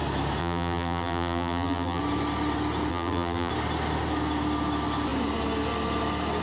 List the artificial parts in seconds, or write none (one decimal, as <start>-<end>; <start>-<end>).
0.4-2.0; 2.9-3.5